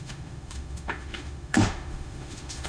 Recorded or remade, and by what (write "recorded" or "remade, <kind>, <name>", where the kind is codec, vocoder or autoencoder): remade, autoencoder, DAC-VAE